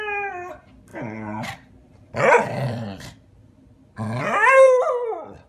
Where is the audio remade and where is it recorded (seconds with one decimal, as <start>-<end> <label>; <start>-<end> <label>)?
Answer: 0.0-0.9 recorded; 0.9-4.2 remade; 4.2-5.5 recorded